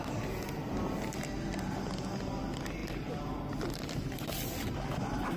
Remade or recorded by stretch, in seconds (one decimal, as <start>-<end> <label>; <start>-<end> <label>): 0.0-5.4 recorded